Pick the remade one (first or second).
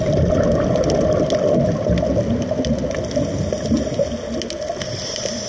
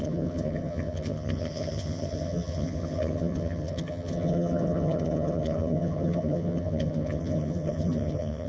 second